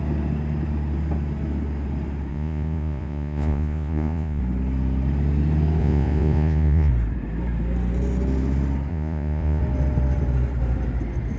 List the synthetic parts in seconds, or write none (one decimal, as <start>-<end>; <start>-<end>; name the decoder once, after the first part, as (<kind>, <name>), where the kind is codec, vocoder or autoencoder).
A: 2.3-4.4 (vocoder, Vocos); 5.8-6.9; 8.9-9.6